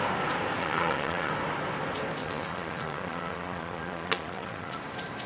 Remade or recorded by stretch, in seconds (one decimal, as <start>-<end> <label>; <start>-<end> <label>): 0.0-0.6 recorded; 0.6-1.3 remade; 1.3-2.2 recorded; 2.2-4.8 remade; 4.8-5.3 recorded